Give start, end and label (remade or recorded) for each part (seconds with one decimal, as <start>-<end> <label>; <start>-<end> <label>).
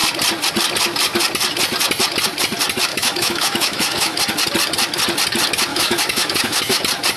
0.0-2.9 recorded; 2.9-4.2 remade; 4.2-5.7 recorded; 5.7-6.8 remade; 6.8-7.2 recorded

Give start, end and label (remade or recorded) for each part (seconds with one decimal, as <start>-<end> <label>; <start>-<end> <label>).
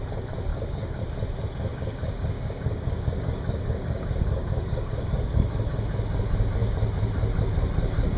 0.0-0.5 recorded; 0.5-1.0 remade; 1.0-1.7 recorded; 1.7-5.7 remade; 5.7-8.2 recorded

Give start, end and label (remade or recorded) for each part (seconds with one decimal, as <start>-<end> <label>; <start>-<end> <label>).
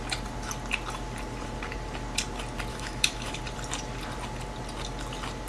0.0-2.7 recorded; 2.7-3.4 remade; 3.4-5.5 recorded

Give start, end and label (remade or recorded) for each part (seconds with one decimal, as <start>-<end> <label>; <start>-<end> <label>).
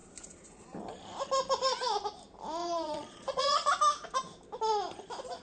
0.0-2.6 recorded; 2.6-3.7 remade; 3.7-5.4 recorded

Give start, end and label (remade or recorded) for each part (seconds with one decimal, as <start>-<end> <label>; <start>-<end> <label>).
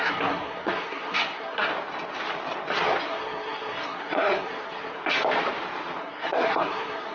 0.0-1.7 remade; 1.7-3.0 recorded; 3.0-5.0 remade; 5.0-6.0 recorded; 6.0-7.1 remade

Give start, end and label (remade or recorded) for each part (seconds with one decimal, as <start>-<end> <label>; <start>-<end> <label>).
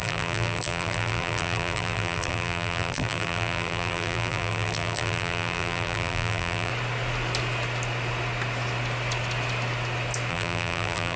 0.0-6.7 remade; 6.7-10.3 recorded; 10.3-11.2 remade